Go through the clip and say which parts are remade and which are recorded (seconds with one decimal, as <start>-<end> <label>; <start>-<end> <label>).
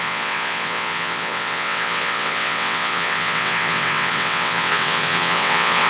0.0-5.9 remade